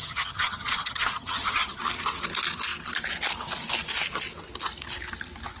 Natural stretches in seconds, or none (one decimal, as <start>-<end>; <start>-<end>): 1.8-5.6